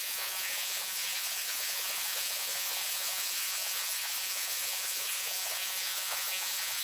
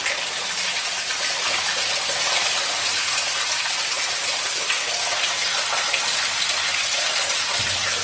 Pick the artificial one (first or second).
first